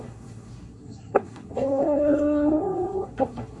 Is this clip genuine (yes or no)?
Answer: no